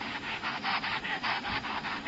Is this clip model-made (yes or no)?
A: yes